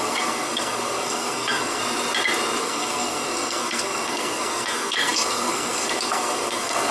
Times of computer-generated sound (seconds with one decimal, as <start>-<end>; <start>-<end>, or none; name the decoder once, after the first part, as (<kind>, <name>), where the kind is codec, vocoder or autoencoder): 0.0-1.8 (codec, SNAC); 2.6-6.9